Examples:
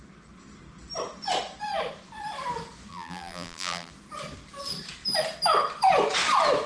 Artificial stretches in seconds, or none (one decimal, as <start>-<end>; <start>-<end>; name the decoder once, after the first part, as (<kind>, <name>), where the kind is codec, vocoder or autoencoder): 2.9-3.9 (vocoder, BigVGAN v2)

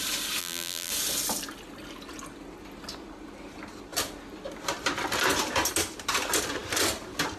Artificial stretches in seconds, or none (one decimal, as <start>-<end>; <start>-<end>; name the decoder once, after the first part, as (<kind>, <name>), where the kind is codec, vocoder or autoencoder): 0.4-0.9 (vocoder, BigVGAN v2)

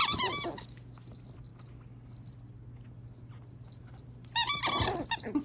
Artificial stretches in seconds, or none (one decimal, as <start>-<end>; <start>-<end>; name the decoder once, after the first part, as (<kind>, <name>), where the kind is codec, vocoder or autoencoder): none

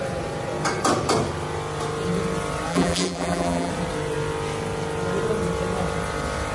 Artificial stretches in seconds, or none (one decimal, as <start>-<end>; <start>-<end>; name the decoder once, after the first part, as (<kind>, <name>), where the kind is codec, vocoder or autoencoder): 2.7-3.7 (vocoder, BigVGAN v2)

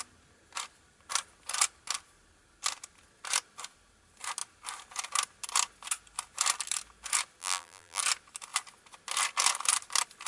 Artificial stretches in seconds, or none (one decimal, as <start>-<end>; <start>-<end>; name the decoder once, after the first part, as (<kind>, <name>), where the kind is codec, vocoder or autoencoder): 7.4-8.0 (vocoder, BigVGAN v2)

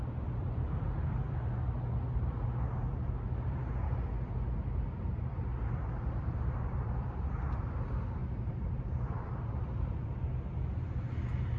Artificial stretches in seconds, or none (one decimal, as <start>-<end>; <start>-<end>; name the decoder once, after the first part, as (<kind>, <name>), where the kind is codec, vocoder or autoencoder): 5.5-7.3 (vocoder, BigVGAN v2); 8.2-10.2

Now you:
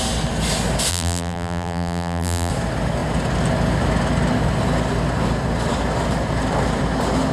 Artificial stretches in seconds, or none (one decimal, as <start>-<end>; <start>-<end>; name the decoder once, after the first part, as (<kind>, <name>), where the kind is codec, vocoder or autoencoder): 0.9-2.5 (vocoder, BigVGAN v2)

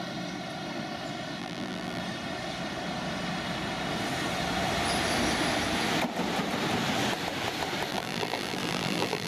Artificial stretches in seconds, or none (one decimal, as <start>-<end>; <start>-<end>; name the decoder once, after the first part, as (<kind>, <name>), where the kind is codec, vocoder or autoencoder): 1.4-2.0 (vocoder, BigVGAN v2); 7.9-9.3